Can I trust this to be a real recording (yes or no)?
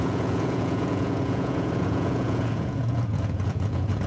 no